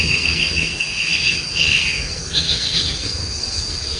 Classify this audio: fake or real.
fake